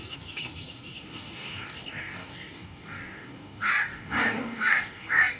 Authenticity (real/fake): fake